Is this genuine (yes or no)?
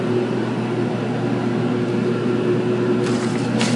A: yes